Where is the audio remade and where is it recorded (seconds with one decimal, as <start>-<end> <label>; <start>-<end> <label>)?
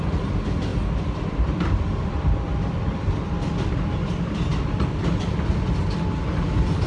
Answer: 0.0-0.7 recorded; 0.7-4.1 remade; 4.1-4.5 recorded; 4.5-5.5 remade; 5.5-6.9 recorded